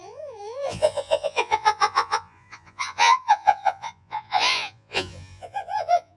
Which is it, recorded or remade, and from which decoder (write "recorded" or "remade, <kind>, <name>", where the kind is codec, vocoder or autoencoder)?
remade, vocoder, Vocos